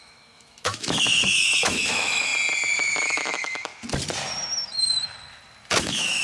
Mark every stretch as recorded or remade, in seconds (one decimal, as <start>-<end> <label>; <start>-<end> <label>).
0.0-2.3 remade; 2.3-3.0 recorded; 3.0-3.7 remade; 3.7-5.8 recorded; 5.8-6.2 remade